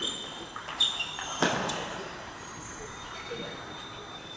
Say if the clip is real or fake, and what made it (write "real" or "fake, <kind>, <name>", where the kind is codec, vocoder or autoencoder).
real